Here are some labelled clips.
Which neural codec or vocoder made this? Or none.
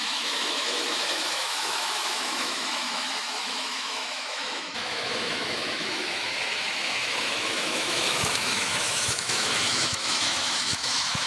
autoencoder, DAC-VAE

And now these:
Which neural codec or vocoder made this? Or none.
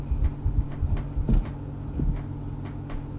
none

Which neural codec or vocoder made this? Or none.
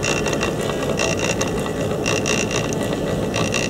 none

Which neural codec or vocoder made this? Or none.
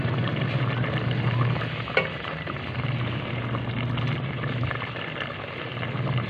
none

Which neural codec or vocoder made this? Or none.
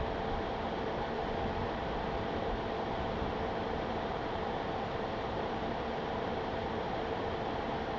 vocoder, BigVGAN v2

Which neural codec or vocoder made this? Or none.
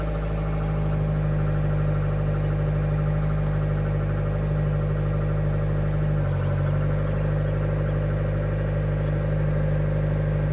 none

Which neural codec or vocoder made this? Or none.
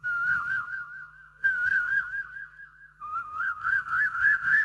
codec, SNAC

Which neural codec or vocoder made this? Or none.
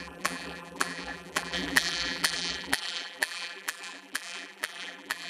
vocoder, BigVGAN v2